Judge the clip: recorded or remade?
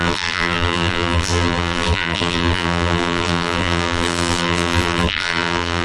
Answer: remade